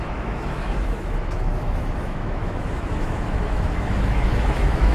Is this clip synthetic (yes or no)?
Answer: yes